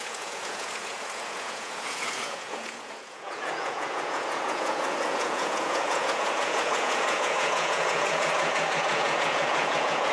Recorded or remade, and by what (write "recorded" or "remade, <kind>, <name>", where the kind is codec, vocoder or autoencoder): remade, vocoder, Vocos